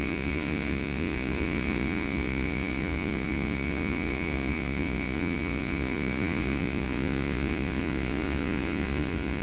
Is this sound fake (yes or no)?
yes